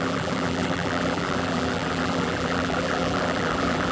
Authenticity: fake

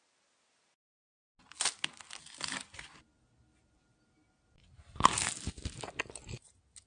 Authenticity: real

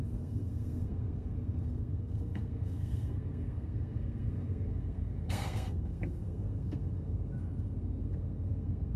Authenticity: fake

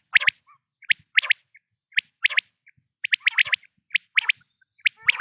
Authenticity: real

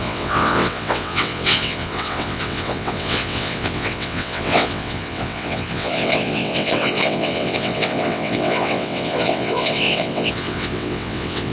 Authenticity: fake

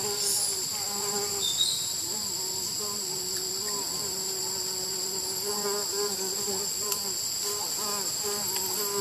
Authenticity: real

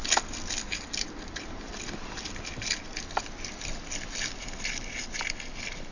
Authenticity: real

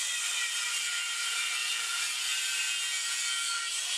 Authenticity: fake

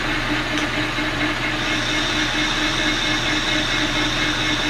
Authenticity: real